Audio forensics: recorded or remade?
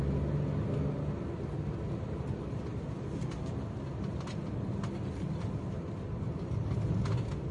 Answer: recorded